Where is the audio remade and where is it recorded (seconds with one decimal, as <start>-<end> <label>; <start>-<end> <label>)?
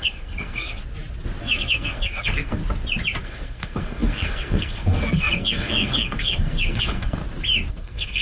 0.0-0.8 remade; 0.8-1.4 recorded; 1.4-2.6 remade; 2.6-3.2 recorded; 3.2-7.2 remade; 7.2-7.7 recorded; 7.7-8.2 remade